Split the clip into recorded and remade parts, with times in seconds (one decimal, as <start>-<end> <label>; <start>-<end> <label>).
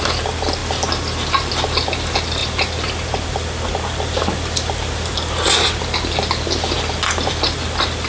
0.0-8.1 recorded